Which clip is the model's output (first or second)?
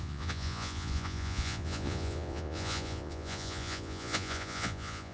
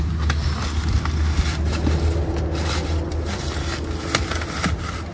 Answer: first